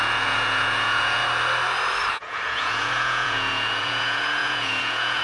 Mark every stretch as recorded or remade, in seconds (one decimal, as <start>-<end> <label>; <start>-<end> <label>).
0.0-1.2 remade; 1.2-2.1 recorded; 2.1-5.2 remade

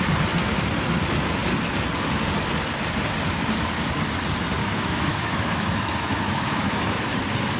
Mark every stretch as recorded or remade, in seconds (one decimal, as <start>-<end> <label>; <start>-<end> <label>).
0.0-4.6 recorded; 4.6-7.0 remade; 7.0-7.6 recorded

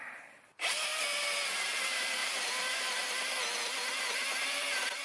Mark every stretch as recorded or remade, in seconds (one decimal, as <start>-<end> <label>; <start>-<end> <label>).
0.0-5.0 recorded

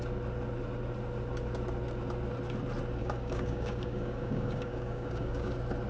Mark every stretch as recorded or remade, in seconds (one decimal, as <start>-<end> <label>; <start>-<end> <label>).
0.0-3.0 recorded; 3.0-5.5 remade; 5.5-5.9 recorded

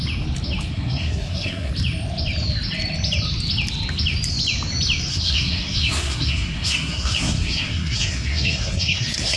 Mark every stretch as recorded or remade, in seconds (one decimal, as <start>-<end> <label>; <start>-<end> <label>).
0.0-0.7 recorded; 0.7-1.7 remade; 1.7-5.1 recorded; 5.1-9.4 remade

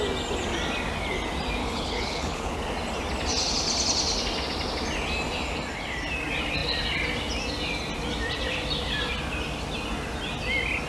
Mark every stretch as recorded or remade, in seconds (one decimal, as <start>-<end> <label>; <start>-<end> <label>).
0.0-1.6 recorded; 1.6-2.6 remade; 2.6-10.9 recorded

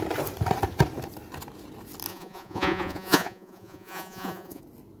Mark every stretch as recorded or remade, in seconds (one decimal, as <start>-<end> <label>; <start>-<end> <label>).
0.0-2.1 recorded; 2.1-4.6 remade; 4.6-5.0 recorded

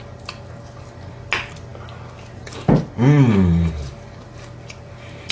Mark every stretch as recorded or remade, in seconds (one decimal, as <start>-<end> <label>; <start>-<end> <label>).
0.0-5.3 recorded